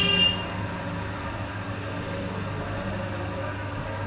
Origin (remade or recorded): recorded